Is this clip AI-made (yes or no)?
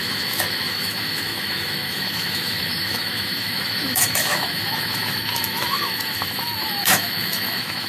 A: yes